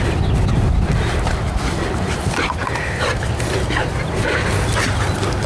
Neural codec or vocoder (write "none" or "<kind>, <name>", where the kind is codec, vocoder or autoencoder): none